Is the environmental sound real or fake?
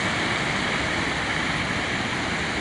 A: real